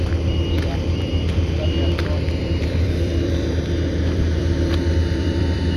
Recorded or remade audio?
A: remade